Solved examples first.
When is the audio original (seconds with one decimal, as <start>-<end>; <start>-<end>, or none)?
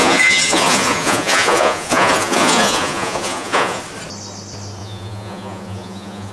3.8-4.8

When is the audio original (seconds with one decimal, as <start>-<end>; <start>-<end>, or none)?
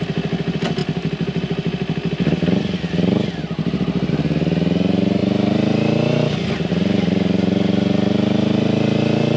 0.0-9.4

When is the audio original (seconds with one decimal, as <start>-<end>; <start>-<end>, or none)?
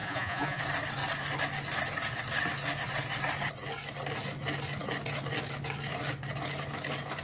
0.6-7.2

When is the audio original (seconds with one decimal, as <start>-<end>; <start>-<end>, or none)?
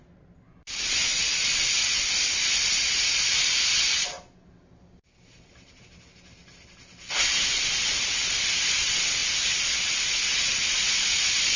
0.0-11.6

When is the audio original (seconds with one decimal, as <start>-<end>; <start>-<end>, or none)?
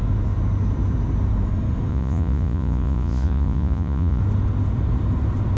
0.0-1.9; 4.2-5.6